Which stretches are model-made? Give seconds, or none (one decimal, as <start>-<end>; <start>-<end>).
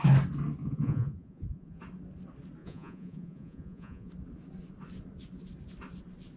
0.6-1.8; 2.6-4.1